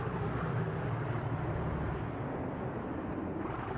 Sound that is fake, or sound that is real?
real